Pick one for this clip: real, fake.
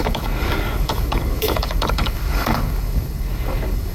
fake